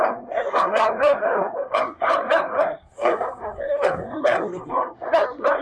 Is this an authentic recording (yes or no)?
no